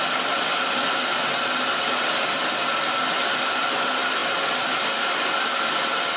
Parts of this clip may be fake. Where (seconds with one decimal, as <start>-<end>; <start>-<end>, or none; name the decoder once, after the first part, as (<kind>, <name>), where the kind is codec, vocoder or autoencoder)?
none